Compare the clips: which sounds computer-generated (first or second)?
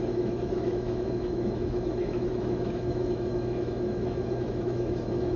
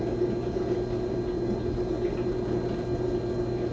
first